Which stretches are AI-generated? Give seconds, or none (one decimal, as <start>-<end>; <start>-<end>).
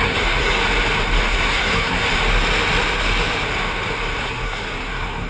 0.0-0.6; 1.3-2.0; 4.2-5.3